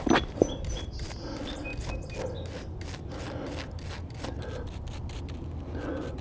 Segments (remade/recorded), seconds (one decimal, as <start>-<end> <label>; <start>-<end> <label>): 0.0-6.2 recorded